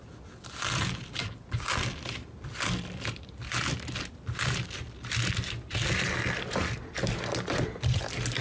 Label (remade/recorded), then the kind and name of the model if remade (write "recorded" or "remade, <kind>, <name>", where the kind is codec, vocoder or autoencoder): recorded